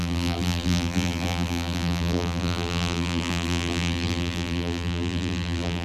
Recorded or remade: remade